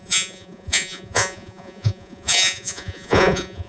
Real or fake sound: fake